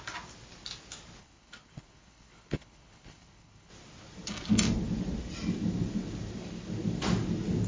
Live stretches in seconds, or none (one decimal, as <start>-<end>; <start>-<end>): 0.0-1.2; 3.7-7.7